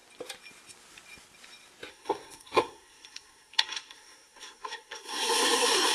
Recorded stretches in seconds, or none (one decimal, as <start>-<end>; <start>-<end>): 0.0-1.9